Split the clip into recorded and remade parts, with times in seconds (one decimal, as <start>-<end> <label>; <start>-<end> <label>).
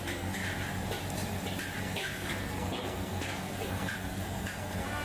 0.0-0.4 remade; 0.4-1.8 recorded; 1.8-5.0 remade